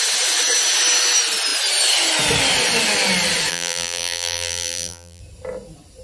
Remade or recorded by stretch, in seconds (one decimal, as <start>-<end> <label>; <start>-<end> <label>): 0.0-3.5 recorded; 3.5-5.2 remade; 5.2-6.0 recorded